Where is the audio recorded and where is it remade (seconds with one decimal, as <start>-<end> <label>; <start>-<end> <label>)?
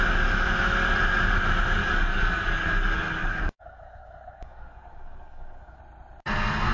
0.0-1.8 recorded; 1.8-5.8 remade; 5.8-6.7 recorded